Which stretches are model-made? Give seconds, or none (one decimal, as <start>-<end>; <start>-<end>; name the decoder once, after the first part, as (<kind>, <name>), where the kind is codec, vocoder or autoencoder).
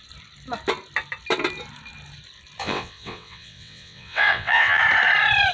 2.6-4.8 (vocoder, WaveNeXt)